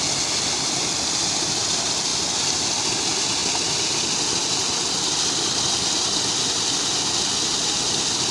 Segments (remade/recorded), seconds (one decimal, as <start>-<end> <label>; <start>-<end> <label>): 0.0-8.3 recorded